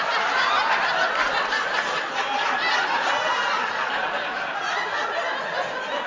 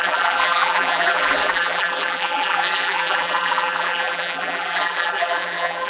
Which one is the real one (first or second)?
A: first